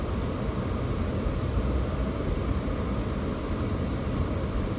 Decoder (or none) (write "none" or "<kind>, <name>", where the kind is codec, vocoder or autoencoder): none